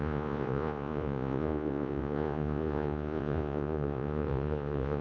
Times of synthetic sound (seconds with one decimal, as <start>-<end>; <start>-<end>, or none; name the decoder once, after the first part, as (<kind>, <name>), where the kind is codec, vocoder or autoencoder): 0.0-5.0 (vocoder, Vocos)